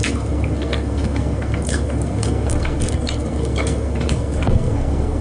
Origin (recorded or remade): remade